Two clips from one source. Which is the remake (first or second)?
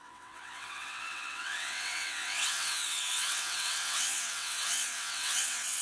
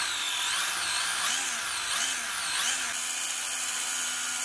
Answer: first